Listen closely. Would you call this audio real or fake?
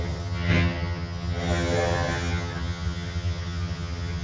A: fake